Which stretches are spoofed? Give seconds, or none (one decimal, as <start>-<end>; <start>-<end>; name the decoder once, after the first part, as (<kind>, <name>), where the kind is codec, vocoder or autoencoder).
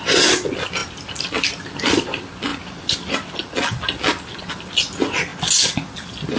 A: none